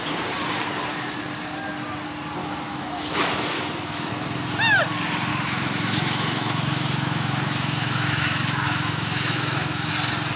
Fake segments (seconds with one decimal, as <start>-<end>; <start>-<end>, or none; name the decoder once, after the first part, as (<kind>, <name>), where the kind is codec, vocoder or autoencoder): 2.4-4.1 (autoencoder, DAC-VAE); 5.3-9.9

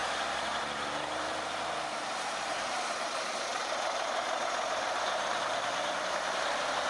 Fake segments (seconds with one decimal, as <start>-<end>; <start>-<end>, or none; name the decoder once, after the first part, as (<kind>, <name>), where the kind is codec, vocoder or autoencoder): 0.0-6.9 (vocoder, BigVGAN v2)

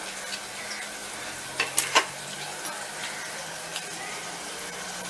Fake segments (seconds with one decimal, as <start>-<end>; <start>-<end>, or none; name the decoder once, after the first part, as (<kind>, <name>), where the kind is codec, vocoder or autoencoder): 3.7-4.6 (vocoder, BigVGAN v2)

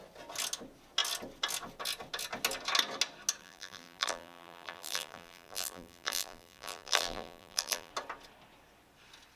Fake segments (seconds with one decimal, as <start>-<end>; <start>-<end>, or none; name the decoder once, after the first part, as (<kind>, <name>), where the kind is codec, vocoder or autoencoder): 3.4-7.9 (vocoder, BigVGAN v2)

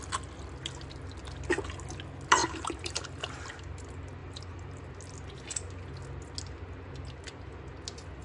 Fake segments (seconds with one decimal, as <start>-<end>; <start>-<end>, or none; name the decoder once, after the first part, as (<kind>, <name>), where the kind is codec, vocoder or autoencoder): 2.4-3.3 (vocoder, BigVGAN v2); 4.2-4.9

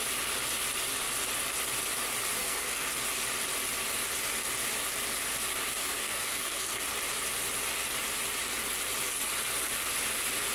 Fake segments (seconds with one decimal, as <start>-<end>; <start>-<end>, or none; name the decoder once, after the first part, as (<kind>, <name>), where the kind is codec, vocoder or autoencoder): 2.4-2.9 (codec, SNAC); 5.8-6.8

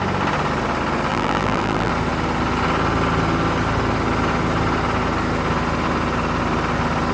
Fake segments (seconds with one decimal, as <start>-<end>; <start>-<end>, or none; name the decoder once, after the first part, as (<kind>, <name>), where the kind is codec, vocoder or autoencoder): 1.1-1.9 (vocoder, BigVGAN v2)